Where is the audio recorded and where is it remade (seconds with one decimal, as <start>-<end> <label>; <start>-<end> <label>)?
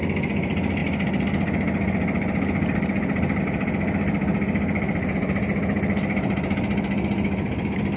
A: 0.0-8.0 recorded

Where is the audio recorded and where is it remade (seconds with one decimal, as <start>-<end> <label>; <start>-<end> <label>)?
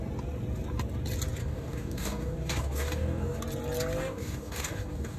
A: 0.0-1.4 recorded; 1.4-3.4 remade; 3.4-4.0 recorded; 4.0-5.2 remade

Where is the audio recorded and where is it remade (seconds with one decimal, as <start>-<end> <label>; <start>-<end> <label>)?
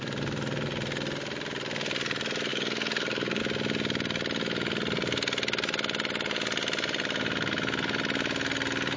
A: 0.0-2.5 recorded; 2.5-3.4 remade; 3.4-9.0 recorded